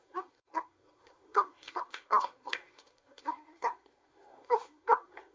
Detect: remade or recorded remade